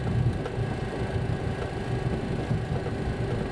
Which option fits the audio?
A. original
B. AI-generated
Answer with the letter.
A